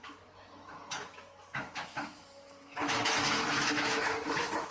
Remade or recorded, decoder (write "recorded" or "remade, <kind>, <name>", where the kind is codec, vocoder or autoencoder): remade, autoencoder, DAC-VAE